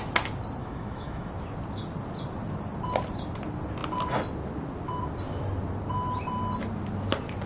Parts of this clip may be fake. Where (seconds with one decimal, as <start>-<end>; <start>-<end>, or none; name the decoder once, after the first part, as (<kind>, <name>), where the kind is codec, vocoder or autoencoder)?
0.6-1.3 (autoencoder, DAC-VAE)